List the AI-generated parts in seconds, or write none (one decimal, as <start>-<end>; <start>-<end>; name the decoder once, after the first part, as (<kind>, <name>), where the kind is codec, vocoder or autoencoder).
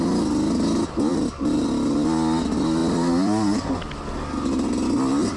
1.1-1.7 (vocoder, BigVGAN v2); 2.8-3.7